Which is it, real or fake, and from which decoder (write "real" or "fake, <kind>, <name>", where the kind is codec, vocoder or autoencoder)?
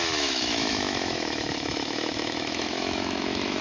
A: fake, autoencoder, DAC-VAE